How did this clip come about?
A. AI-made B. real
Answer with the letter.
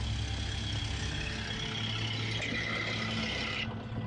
B